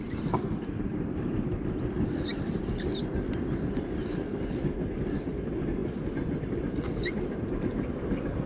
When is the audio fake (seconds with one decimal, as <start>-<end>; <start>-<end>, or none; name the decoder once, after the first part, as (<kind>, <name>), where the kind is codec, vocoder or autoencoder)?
none